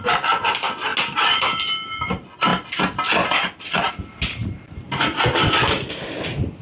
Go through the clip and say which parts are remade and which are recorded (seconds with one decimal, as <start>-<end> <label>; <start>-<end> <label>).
0.0-4.4 recorded; 4.4-5.2 remade; 5.2-6.6 recorded